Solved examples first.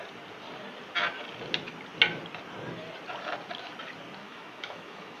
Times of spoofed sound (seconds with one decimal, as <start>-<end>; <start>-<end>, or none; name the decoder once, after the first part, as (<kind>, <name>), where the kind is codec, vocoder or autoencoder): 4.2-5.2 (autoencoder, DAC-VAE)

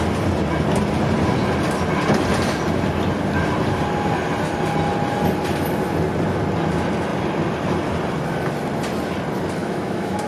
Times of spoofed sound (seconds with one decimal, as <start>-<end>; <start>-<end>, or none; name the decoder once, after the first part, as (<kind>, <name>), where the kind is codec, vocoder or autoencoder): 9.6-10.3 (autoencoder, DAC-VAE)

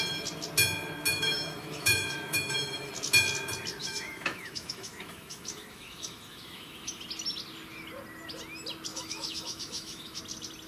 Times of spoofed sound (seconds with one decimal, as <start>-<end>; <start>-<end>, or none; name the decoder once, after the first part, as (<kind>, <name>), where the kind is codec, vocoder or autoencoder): 1.1-2.9 (autoencoder, DAC-VAE); 3.8-7.0; 8.9-10.2

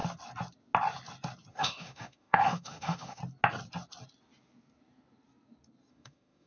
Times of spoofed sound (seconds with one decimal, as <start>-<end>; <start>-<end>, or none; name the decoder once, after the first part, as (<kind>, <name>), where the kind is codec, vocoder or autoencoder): 1.5-3.2 (autoencoder, DAC-VAE); 5.9-6.5